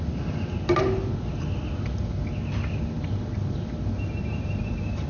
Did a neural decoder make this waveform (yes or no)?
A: no